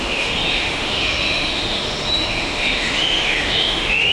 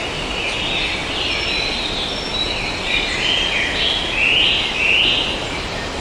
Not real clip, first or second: first